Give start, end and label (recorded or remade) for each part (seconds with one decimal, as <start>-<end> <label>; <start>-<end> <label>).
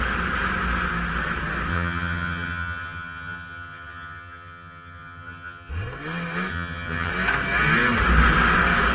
0.0-1.7 recorded; 1.7-5.7 remade; 5.7-6.5 recorded; 6.5-7.1 remade; 7.1-8.9 recorded